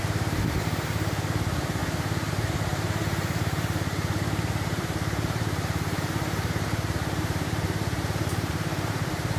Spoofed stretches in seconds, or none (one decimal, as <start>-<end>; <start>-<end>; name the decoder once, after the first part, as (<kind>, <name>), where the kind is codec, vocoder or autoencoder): 0.0-1.8 (vocoder, BigVGAN v2); 2.3-9.4